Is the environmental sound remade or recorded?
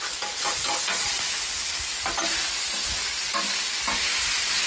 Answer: recorded